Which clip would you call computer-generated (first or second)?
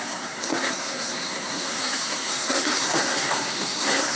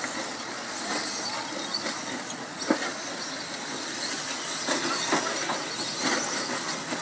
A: first